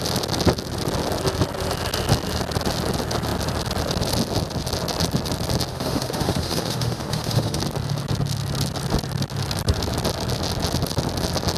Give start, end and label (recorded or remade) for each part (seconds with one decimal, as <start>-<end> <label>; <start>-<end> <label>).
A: 0.0-5.7 recorded; 5.7-7.6 remade; 7.6-11.6 recorded